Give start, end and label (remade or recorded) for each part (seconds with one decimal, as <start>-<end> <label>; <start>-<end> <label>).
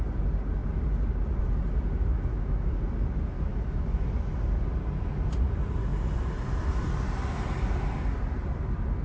0.0-2.3 recorded; 2.3-2.8 remade; 2.8-3.5 recorded; 3.5-4.1 remade; 4.1-9.0 recorded